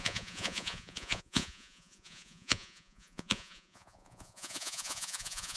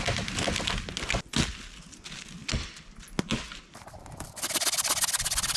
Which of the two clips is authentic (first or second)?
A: second